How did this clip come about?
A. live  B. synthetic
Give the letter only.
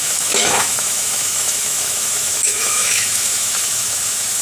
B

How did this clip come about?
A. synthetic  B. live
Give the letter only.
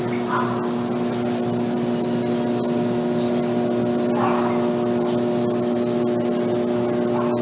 B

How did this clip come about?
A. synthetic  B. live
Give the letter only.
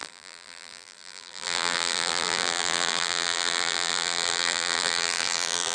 A